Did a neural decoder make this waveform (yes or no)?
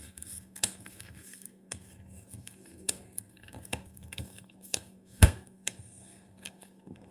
yes